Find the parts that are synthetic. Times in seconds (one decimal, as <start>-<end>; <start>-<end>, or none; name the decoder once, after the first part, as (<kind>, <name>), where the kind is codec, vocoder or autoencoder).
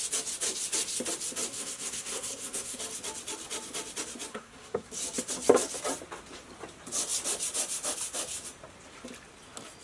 1.5-2.8 (codec, SNAC); 4.3-4.9